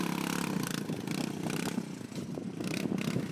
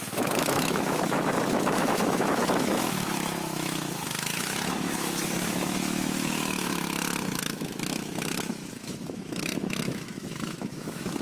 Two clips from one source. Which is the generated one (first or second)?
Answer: second